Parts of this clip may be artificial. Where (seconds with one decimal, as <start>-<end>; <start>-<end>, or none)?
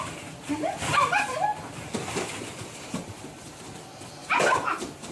0.0-5.1